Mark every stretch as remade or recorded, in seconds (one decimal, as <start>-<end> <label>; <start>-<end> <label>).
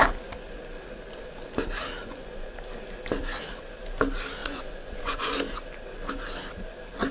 0.0-2.0 recorded; 2.0-2.5 remade; 2.5-4.4 recorded; 4.4-5.4 remade; 5.4-7.1 recorded